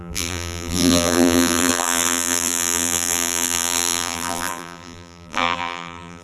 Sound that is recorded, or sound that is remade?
remade